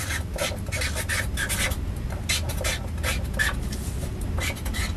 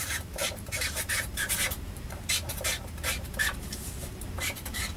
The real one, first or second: first